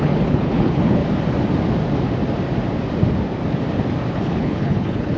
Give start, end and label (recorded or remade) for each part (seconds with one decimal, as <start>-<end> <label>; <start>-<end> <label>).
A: 0.0-1.0 remade; 1.0-4.1 recorded; 4.1-5.2 remade